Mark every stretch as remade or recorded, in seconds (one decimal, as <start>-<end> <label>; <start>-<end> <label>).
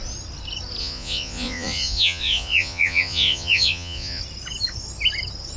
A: 0.0-0.8 recorded; 0.8-4.2 remade; 4.2-5.6 recorded